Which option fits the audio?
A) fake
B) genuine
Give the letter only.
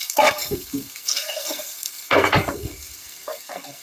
A